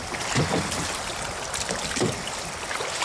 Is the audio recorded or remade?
recorded